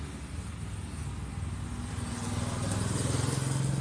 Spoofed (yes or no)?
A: no